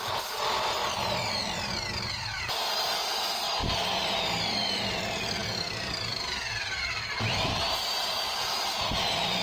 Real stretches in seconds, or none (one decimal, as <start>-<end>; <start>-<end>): 0.8-2.9